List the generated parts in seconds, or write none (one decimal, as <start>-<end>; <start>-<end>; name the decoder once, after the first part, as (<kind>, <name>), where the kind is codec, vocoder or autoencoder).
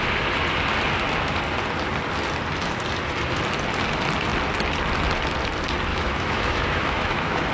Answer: 5.9-7.5 (autoencoder, DAC-VAE)